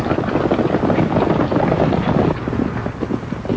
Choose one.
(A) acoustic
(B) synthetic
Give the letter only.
A